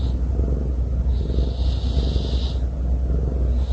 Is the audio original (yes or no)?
yes